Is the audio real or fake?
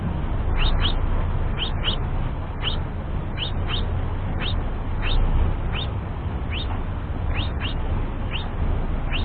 real